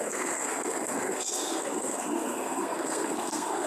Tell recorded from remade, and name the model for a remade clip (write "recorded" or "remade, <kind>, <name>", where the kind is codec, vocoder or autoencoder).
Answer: remade, codec, SNAC